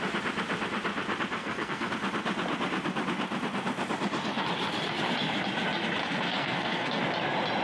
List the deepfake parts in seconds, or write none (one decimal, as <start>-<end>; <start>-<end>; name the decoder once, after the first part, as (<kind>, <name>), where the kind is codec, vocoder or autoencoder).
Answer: 1.4-1.9 (codec, SNAC); 6.0-7.0